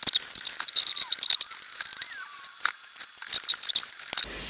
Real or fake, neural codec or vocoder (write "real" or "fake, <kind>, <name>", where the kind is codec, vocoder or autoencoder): real